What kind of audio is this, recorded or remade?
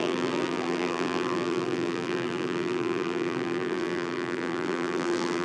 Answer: remade